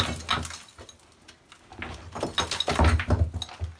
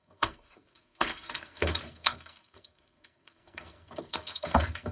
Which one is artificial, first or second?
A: second